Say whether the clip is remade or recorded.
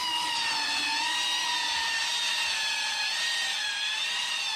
recorded